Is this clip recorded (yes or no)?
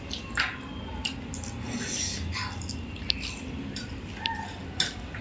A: yes